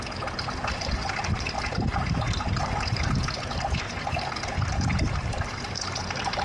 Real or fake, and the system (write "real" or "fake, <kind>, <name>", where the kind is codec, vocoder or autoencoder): fake, vocoder, BigVGAN v2